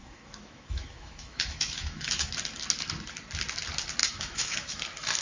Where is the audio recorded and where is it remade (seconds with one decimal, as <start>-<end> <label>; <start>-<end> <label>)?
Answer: 0.0-2.3 remade; 2.3-4.0 recorded; 4.0-4.8 remade; 4.8-5.2 recorded